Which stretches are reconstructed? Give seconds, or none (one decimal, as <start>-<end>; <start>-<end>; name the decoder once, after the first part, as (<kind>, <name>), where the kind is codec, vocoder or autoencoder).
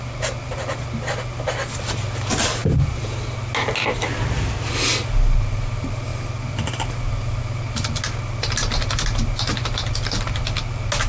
none